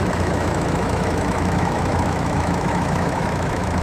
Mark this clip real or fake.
fake